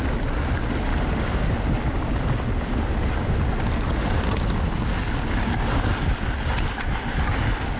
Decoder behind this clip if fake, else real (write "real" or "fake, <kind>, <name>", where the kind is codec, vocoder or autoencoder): real